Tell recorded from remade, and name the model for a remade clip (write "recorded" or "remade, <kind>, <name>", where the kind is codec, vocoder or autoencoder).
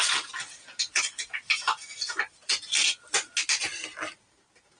recorded